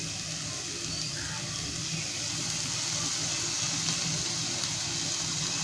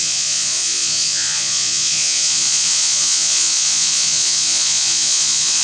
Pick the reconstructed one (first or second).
second